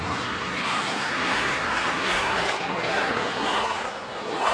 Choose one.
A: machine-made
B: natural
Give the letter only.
A